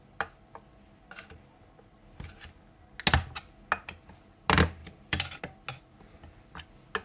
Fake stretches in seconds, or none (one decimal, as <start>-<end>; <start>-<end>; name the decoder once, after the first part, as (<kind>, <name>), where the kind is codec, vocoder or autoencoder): 4.8-5.4 (vocoder, BigVGAN v2)